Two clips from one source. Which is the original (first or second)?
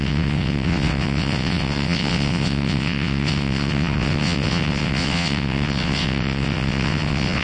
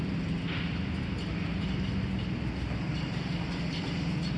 second